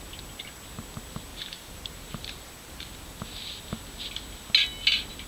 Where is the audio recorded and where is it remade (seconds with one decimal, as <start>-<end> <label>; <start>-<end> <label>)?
0.0-1.3 recorded; 1.3-3.2 remade; 3.2-5.3 recorded